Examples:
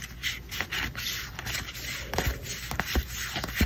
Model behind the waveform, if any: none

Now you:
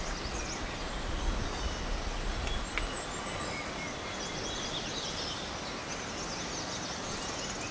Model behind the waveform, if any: none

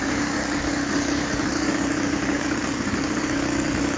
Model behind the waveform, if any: codec, DAC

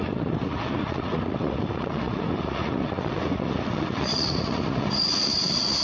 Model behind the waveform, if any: vocoder, Vocos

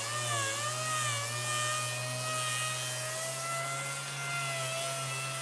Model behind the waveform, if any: none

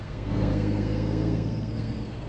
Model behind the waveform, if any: codec, SNAC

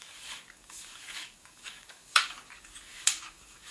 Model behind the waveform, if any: codec, DAC